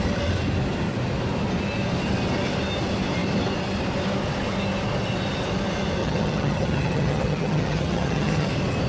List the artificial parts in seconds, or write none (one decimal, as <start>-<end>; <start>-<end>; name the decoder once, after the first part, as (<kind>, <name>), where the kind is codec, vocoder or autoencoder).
6.0-8.5 (vocoder, HiFi-GAN)